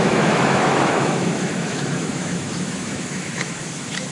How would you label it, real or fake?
fake